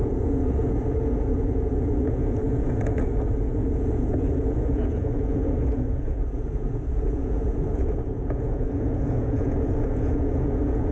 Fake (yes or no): yes